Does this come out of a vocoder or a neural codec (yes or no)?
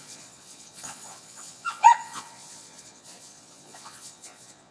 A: yes